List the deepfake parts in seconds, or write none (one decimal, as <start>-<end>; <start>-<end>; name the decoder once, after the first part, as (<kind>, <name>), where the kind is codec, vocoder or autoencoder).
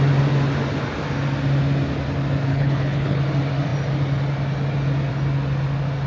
2.5-3.2 (codec, HILCodec)